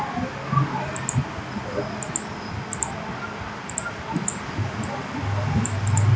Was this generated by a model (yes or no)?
no